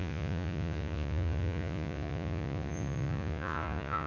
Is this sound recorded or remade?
remade